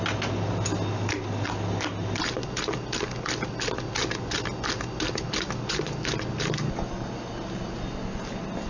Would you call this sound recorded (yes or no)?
yes